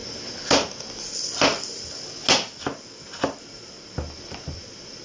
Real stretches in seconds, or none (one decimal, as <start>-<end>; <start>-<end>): 0.0-5.0